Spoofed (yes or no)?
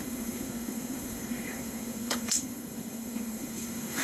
yes